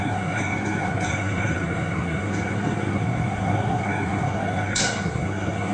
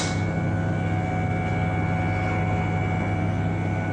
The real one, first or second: second